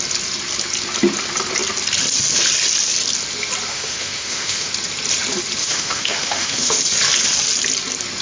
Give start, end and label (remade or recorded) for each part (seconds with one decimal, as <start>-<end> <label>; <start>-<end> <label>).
0.0-3.7 recorded; 3.7-4.7 remade; 4.7-5.6 recorded; 5.6-6.8 remade; 6.8-8.2 recorded